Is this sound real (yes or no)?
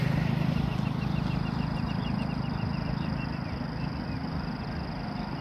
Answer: yes